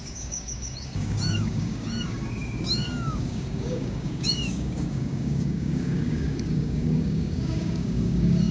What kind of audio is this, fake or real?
fake